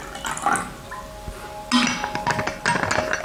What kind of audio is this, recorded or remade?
recorded